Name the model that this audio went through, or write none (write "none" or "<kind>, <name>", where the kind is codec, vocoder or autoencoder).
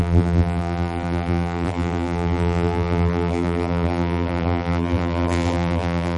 vocoder, BigVGAN v2